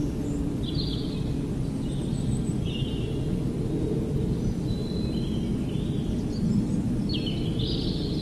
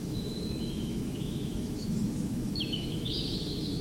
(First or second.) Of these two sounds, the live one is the first